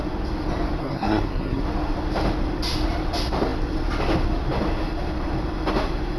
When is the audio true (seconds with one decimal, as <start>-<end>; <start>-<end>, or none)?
0.0-0.8; 1.6-6.2